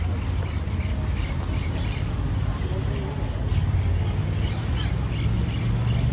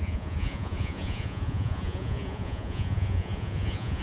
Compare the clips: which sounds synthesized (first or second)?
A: second